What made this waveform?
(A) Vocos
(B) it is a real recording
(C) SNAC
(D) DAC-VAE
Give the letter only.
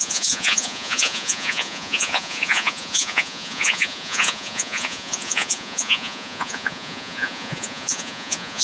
A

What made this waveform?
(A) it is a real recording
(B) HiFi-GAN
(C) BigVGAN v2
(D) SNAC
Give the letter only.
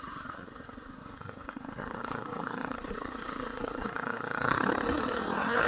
D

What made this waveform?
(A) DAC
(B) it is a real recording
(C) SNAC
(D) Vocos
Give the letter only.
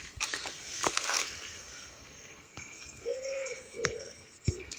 C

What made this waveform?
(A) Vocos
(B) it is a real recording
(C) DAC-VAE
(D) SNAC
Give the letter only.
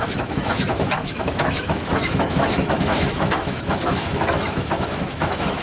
C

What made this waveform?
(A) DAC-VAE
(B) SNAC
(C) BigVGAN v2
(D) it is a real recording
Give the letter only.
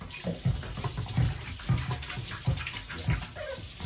D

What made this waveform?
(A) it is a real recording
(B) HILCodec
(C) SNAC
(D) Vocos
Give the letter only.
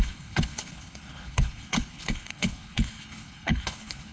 B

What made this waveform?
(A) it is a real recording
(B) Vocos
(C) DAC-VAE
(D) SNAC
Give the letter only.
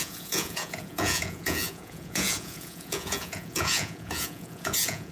B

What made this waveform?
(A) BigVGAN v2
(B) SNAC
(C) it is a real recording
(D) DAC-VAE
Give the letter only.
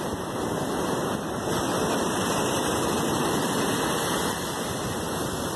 C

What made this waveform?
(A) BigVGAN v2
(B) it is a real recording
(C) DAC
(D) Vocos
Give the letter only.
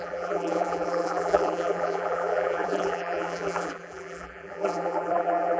A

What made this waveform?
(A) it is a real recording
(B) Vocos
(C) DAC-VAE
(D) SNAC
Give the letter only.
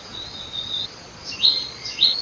B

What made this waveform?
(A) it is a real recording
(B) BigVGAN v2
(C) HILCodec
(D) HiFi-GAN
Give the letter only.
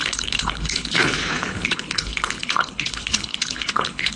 C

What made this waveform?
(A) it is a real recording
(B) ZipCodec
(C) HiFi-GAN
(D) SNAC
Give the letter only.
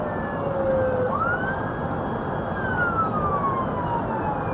A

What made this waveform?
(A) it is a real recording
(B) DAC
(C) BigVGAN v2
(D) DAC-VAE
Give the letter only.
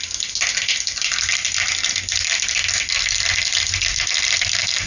A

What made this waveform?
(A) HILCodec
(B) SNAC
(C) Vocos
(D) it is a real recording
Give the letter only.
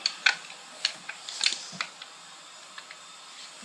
D